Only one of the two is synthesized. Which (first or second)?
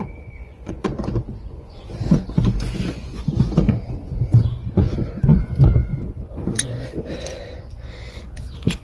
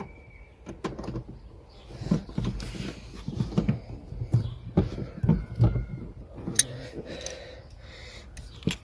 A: first